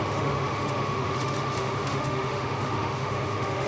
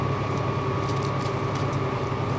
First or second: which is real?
second